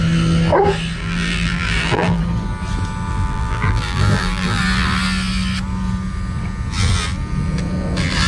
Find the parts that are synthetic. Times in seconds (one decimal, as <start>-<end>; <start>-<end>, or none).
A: 1.0-2.2; 3.1-4.6